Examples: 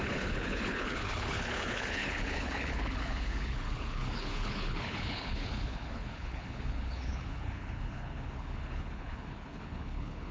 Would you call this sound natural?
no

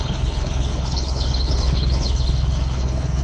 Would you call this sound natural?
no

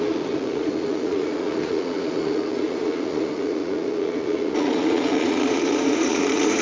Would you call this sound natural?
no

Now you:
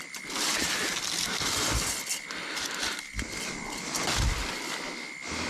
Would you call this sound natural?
yes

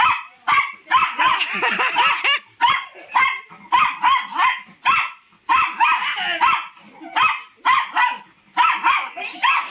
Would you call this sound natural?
yes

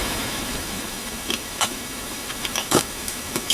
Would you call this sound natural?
no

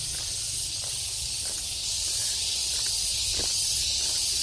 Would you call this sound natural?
yes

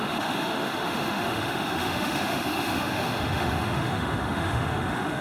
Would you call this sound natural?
no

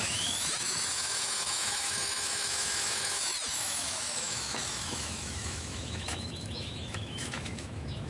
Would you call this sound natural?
no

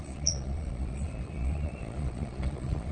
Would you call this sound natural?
no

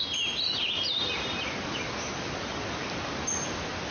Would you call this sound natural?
yes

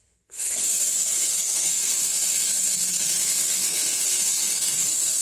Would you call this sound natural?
no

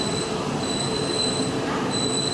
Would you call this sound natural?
yes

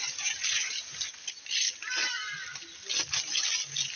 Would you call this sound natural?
yes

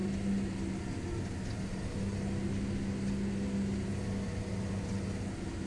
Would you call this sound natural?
yes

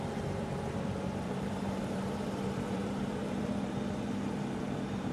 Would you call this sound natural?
no